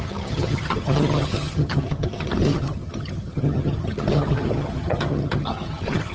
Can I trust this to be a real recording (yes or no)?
no